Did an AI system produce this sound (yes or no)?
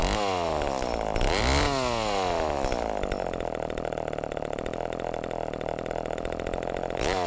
no